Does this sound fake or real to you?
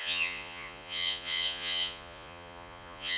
fake